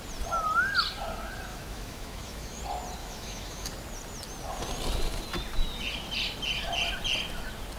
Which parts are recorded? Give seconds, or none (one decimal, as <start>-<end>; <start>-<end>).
0.0-1.5; 2.6-3.0; 3.7-7.8